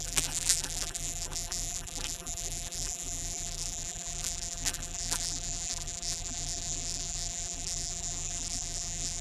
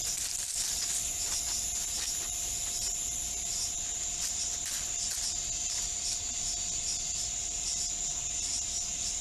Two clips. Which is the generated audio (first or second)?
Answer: first